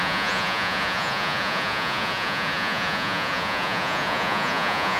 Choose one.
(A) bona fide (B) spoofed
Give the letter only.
B